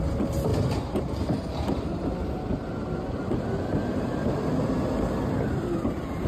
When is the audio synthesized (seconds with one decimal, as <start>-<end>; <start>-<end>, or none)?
none